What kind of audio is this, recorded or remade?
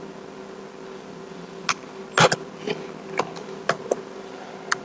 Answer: recorded